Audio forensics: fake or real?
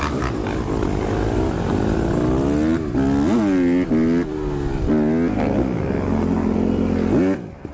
real